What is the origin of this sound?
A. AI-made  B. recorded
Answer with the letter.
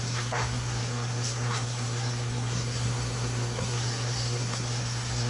A